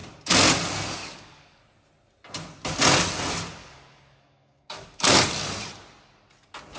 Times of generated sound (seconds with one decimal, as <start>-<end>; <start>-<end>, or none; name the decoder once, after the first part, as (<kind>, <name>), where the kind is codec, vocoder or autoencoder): 1.0-1.6 (codec, DAC); 3.6-5.2